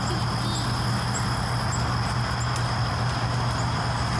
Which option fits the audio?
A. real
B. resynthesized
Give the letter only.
A